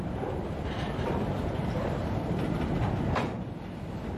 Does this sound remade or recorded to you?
remade